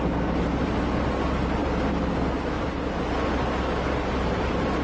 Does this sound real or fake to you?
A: real